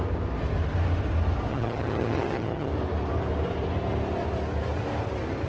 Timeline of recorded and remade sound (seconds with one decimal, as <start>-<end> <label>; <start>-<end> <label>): 0.0-1.5 recorded; 1.5-2.7 remade; 2.7-5.5 recorded